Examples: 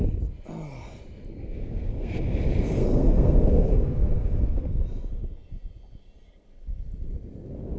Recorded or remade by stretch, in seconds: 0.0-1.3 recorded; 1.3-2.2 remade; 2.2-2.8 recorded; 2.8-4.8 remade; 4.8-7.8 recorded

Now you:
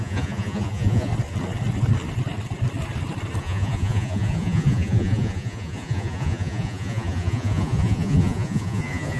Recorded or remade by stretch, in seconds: 0.0-1.1 remade; 1.1-3.4 recorded; 3.4-9.2 remade

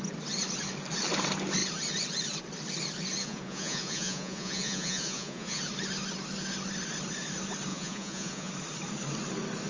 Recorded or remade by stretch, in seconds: 0.0-3.2 recorded; 3.2-5.6 remade; 5.6-7.7 recorded; 7.7-8.5 remade; 8.5-9.7 recorded

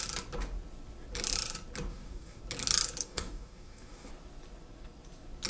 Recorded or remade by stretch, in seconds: 0.0-1.9 recorded; 1.9-2.4 remade; 2.4-3.0 recorded; 3.0-4.1 remade; 4.1-5.5 recorded

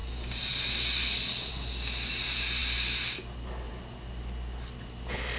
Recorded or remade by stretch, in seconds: 0.0-5.4 recorded

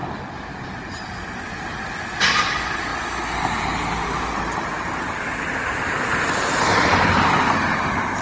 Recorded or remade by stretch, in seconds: 0.0-2.4 recorded; 2.4-2.9 remade; 2.9-5.3 recorded; 5.3-8.2 remade

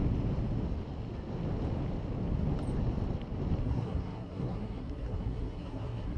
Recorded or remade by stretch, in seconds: 0.0-3.6 recorded; 3.6-6.2 remade